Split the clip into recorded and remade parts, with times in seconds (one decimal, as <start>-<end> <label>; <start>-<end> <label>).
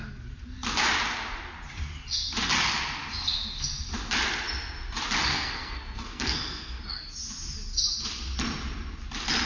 0.0-5.3 recorded; 5.3-6.8 remade; 6.8-9.5 recorded